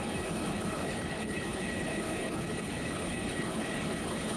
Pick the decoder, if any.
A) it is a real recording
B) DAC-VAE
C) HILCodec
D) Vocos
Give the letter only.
C